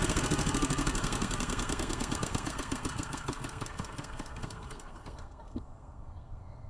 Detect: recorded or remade remade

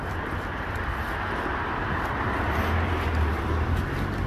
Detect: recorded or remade recorded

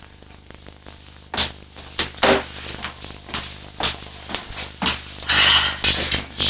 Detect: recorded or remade recorded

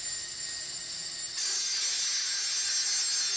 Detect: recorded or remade recorded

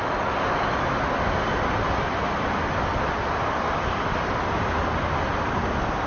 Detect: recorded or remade recorded